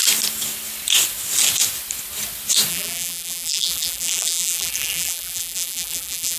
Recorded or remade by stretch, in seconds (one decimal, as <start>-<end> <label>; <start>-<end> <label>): 0.0-2.7 recorded; 2.7-6.4 remade